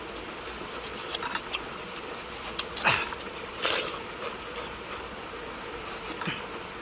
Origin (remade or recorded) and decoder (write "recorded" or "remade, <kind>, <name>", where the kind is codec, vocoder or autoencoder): recorded